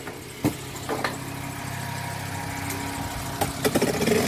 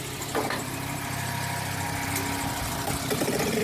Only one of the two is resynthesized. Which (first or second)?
second